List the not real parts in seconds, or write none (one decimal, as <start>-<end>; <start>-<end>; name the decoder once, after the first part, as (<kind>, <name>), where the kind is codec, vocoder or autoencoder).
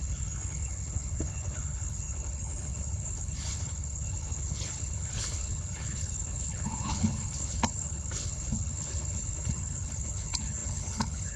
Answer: 0.0-11.4 (codec, HILCodec)